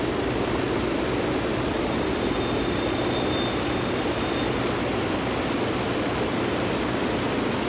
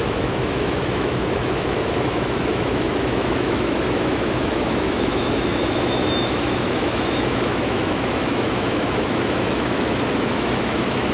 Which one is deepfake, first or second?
second